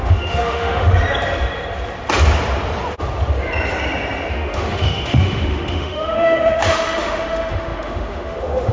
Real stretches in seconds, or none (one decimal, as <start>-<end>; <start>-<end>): 0.9-4.3